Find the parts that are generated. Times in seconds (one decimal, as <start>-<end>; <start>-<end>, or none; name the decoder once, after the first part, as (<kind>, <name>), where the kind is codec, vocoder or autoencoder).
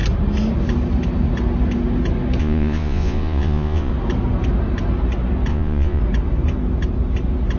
2.4-3.9 (vocoder, Vocos); 5.5-6.0